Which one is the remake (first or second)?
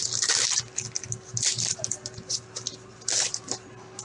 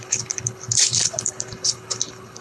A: second